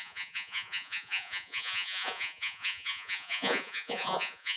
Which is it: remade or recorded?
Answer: remade